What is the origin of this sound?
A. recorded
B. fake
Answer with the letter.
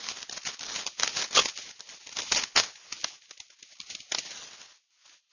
A